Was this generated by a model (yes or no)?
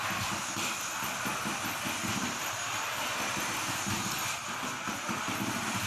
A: no